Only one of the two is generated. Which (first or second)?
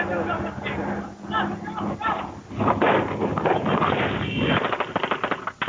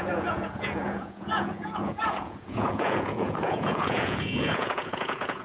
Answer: second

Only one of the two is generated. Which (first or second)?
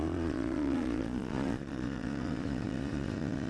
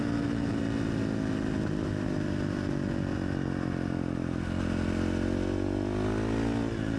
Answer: first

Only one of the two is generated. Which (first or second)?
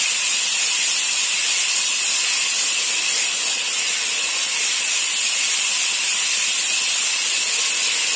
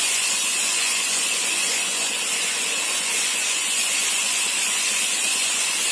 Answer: second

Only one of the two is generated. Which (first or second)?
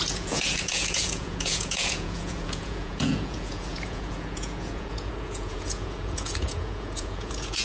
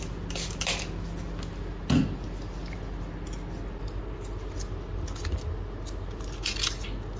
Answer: first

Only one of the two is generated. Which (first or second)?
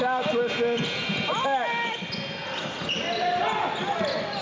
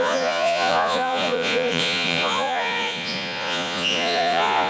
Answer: second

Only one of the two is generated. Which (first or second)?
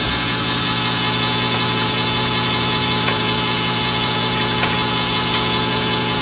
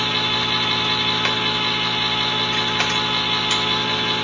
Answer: first